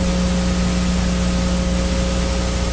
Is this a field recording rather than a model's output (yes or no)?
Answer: yes